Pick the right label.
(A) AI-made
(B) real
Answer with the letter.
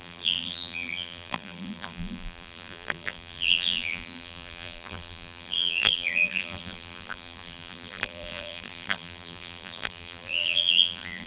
A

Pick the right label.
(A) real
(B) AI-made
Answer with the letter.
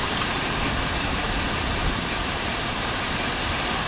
B